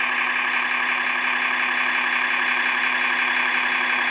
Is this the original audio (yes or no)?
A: yes